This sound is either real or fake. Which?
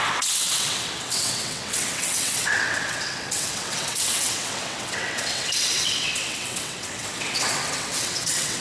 fake